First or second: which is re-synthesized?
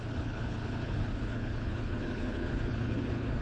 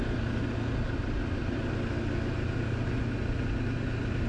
first